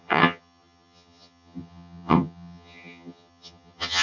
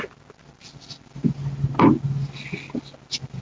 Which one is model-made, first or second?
first